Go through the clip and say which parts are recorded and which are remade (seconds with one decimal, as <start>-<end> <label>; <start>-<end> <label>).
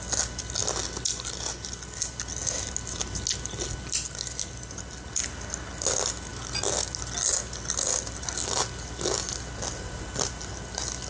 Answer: 0.0-11.1 recorded